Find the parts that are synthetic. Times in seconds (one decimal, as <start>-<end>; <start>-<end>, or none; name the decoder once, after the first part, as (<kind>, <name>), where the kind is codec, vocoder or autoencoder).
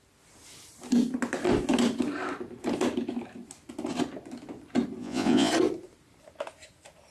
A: 5.0-5.5 (vocoder, Vocos)